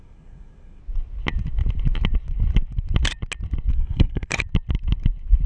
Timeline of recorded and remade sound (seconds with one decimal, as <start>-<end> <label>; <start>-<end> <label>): 0.0-0.8 remade; 0.8-3.7 recorded; 3.7-4.3 remade; 4.3-5.5 recorded